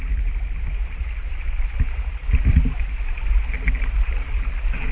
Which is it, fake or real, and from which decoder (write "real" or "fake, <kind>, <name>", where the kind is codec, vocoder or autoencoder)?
real